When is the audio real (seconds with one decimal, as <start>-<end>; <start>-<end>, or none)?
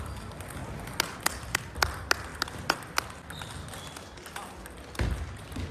0.0-5.7